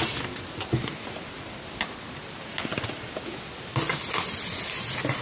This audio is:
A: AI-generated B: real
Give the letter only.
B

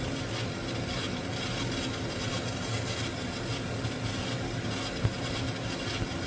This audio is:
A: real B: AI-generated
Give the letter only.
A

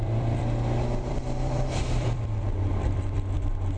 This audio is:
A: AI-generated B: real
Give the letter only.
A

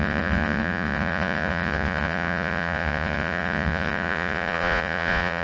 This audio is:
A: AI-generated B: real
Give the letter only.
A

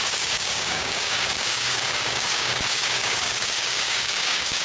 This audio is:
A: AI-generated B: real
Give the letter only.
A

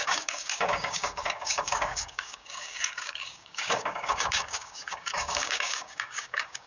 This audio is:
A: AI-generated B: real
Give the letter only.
A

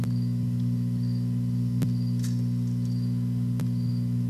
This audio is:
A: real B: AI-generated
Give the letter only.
A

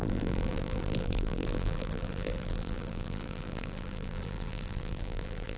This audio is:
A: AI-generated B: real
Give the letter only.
A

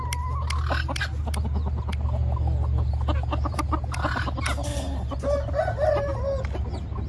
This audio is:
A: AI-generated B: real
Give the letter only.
B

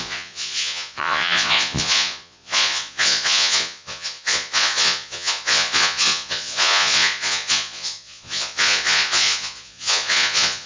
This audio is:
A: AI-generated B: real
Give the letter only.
A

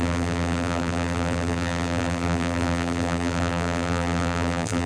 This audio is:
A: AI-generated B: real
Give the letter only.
A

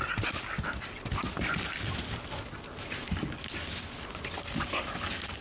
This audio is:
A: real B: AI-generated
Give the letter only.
A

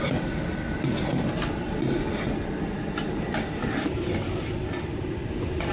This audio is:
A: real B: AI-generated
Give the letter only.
A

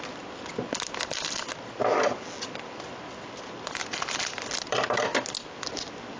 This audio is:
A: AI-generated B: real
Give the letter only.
B